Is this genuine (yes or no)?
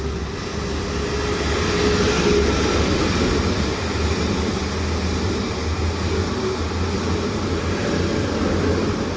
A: yes